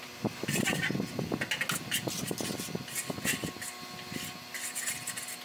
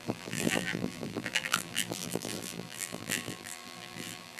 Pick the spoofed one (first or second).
second